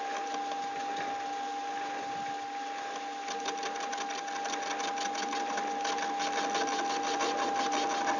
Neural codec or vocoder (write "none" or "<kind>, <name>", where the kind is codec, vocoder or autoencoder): none